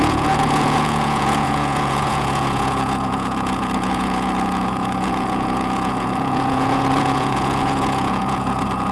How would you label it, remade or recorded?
remade